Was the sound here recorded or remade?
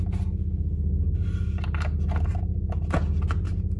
recorded